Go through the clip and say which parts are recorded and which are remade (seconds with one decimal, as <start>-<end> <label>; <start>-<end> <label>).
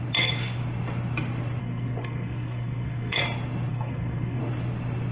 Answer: 0.0-1.6 recorded; 1.6-3.2 remade; 3.2-3.7 recorded; 3.7-4.4 remade; 4.4-5.1 recorded